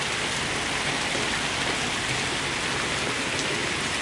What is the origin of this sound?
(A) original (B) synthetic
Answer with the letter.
A